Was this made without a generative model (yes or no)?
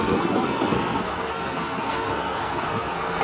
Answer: no